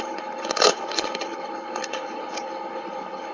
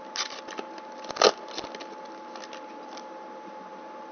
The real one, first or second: second